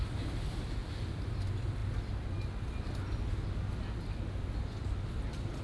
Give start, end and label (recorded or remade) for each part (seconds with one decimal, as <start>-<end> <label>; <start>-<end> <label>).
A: 0.0-0.8 recorded; 0.8-1.3 remade; 1.3-5.6 recorded